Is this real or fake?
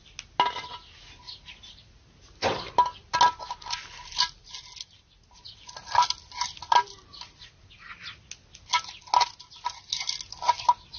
real